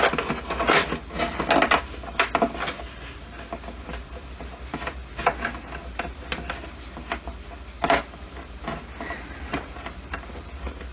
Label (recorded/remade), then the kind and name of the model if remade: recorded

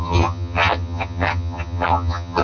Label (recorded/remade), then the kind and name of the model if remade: remade, vocoder, HiFi-GAN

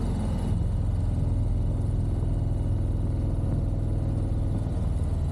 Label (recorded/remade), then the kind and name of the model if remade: recorded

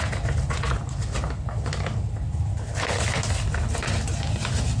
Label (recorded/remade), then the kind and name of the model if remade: recorded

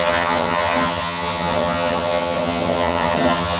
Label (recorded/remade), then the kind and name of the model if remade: remade, vocoder, HiFi-GAN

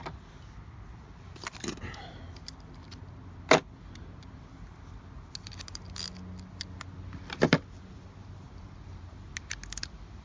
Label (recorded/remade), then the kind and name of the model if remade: recorded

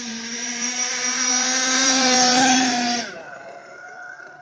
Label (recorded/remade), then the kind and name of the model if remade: remade, vocoder, BigVGAN v2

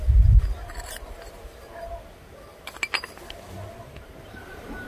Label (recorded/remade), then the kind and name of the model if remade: recorded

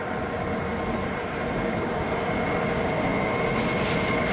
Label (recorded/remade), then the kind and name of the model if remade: recorded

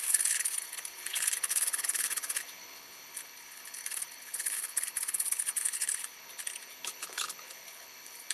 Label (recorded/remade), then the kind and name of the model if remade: remade, codec, HILCodec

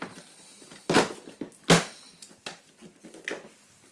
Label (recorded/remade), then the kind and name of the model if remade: recorded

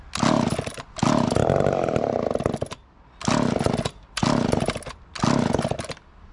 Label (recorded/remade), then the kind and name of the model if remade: recorded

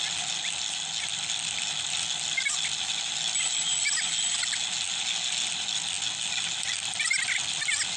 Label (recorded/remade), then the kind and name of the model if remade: recorded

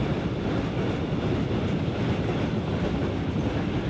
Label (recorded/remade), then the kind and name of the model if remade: recorded